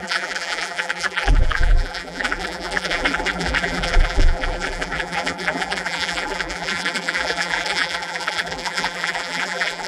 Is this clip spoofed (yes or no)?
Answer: yes